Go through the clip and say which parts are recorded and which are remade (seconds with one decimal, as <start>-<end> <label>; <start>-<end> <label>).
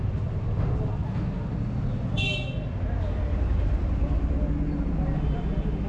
0.0-5.9 recorded